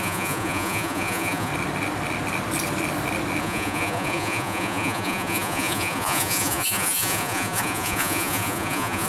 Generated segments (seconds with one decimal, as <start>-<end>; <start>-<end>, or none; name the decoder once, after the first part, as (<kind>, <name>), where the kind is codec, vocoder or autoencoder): 0.0-1.5 (vocoder, Vocos); 3.4-9.1